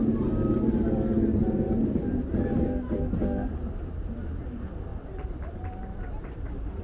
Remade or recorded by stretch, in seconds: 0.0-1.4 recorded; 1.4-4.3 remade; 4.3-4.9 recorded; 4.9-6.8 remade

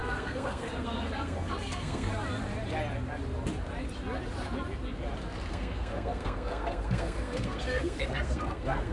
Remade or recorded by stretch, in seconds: 0.0-2.1 remade; 2.1-5.5 recorded; 5.5-8.9 remade

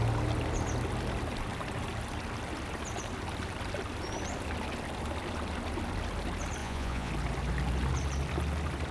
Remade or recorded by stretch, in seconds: 0.0-6.6 recorded; 6.6-7.1 remade; 7.1-8.9 recorded

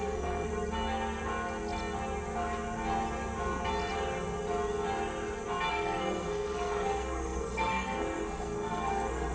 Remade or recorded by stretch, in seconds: 0.0-0.5 remade; 0.5-5.7 recorded; 5.7-9.3 remade

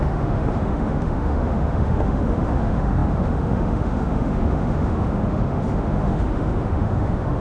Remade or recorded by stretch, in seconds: 0.0-7.4 remade

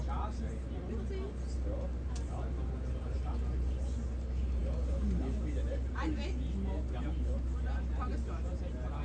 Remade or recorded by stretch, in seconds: 0.0-9.0 recorded

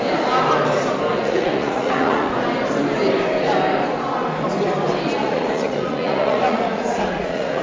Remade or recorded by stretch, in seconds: 0.0-1.1 recorded; 1.1-2.3 remade; 2.3-5.2 recorded; 5.2-7.6 remade